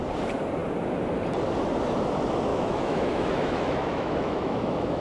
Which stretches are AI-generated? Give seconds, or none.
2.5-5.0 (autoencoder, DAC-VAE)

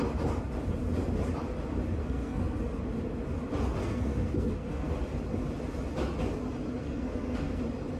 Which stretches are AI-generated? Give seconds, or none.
2.0-2.6 (codec, SNAC); 3.8-4.9; 6.8-7.6

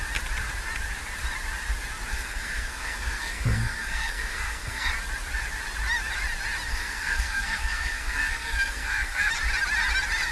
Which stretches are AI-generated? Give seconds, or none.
2.1-4.9 (codec, SNAC); 6.7-9.3

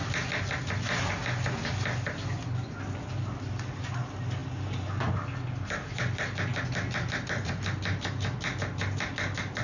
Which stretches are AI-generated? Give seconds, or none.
none

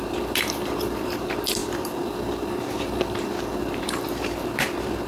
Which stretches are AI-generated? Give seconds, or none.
0.0-5.1 (vocoder, BigVGAN v2)

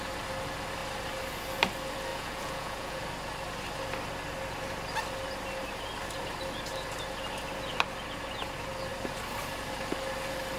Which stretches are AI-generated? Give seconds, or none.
2.1-3.0 (vocoder, Vocos)

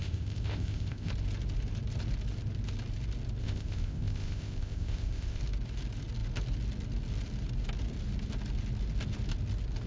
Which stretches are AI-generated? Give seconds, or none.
0.0-1.1 (codec, ZipCodec); 3.4-5.4

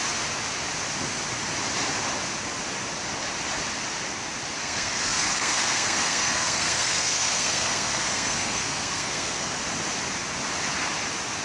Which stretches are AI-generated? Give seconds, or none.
4.6-9.6 (codec, SNAC)